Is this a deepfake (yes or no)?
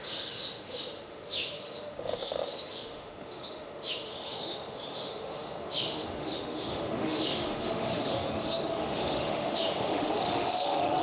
yes